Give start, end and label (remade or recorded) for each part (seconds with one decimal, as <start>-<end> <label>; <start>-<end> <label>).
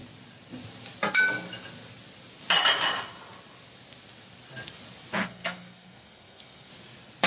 0.0-5.2 recorded; 5.2-6.7 remade; 6.7-7.3 recorded